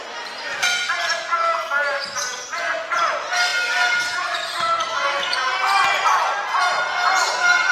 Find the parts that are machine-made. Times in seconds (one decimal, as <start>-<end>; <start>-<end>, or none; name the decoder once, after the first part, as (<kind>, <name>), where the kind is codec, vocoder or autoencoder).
none

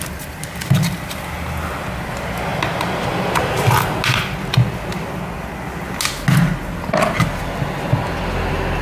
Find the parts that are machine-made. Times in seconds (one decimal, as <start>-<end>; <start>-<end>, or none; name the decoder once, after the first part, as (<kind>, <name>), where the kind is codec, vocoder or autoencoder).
none

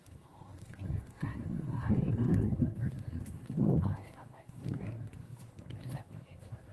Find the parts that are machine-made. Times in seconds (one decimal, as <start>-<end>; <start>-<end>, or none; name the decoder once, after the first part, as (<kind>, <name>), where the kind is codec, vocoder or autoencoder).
0.0-6.7 (codec, SNAC)

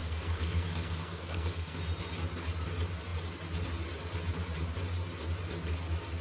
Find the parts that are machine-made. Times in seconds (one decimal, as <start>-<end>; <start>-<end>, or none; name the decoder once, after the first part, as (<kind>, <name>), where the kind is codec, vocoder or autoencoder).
0.0-1.8 (codec, SNAC)